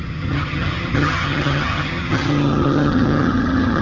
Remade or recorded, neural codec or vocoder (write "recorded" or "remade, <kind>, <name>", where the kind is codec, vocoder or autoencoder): remade, vocoder, HiFi-GAN